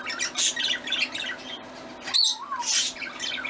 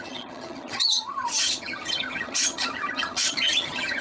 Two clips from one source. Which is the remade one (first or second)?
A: second